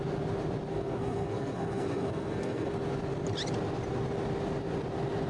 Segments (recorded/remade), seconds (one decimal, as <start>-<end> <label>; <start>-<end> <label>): 0.0-0.7 recorded; 0.7-2.7 remade; 2.7-5.3 recorded